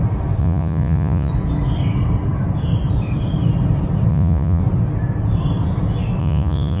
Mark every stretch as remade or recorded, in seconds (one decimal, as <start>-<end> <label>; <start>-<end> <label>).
0.0-0.4 recorded; 0.4-1.3 remade; 1.3-4.1 recorded; 4.1-4.6 remade; 4.6-6.2 recorded; 6.2-6.8 remade